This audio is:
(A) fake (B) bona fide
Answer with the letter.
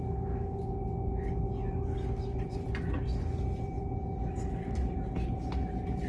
B